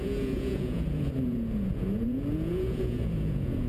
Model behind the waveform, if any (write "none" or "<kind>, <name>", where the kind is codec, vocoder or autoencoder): vocoder, Vocos